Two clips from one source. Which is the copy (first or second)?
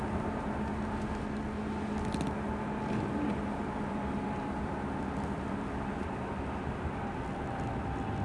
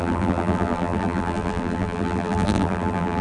second